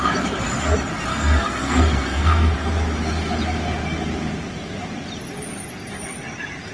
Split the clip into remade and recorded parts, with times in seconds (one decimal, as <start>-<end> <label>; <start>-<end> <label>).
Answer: 0.0-1.1 recorded; 1.1-2.5 remade; 2.5-6.7 recorded